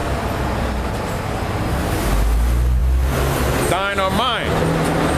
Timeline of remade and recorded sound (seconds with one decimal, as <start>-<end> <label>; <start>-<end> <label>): 0.0-5.2 recorded